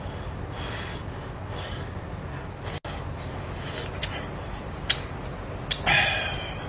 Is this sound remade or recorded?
recorded